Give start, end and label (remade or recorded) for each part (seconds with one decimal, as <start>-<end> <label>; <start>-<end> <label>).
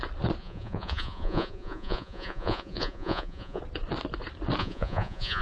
0.0-0.4 recorded; 0.4-3.6 remade; 3.6-4.6 recorded; 4.6-5.4 remade